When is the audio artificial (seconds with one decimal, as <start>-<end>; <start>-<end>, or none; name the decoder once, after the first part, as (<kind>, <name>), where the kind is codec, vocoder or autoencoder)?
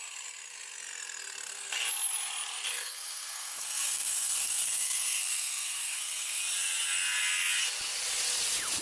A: 2.7-6.4 (codec, SNAC)